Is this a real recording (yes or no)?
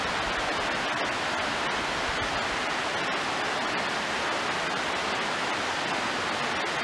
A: yes